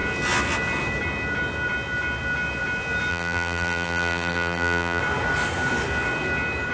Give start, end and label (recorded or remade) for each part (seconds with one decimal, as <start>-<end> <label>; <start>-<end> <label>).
0.0-3.1 recorded; 3.1-5.0 remade; 5.0-6.7 recorded